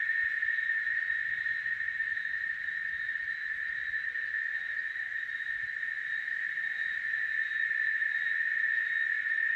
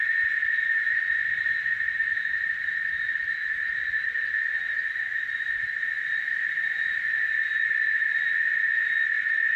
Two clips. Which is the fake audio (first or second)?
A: second